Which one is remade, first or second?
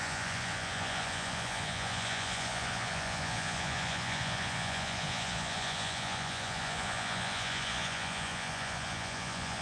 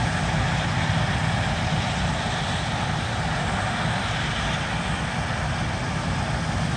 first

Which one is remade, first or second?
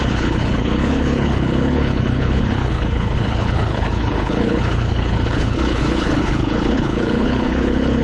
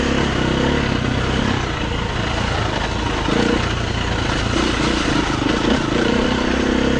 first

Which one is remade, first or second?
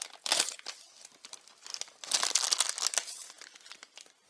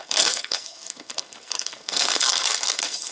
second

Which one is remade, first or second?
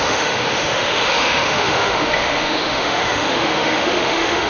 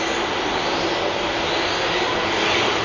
first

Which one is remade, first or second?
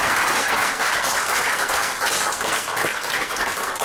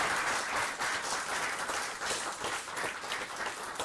first